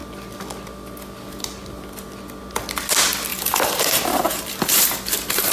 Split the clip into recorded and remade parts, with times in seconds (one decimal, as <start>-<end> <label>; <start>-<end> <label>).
0.0-3.3 recorded; 3.3-5.5 remade